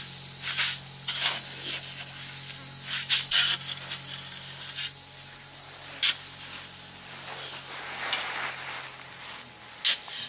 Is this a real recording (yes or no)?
yes